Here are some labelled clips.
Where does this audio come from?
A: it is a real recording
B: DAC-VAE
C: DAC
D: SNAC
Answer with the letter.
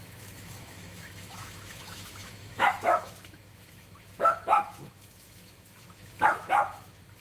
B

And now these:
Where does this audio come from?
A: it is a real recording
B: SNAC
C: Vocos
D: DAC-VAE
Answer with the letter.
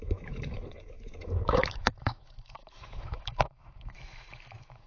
D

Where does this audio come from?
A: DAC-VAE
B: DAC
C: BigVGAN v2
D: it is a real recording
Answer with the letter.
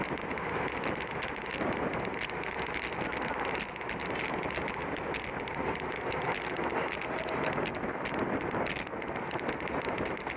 D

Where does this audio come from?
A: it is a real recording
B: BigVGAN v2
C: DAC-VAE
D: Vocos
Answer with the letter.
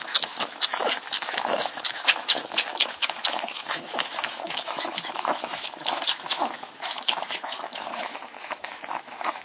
C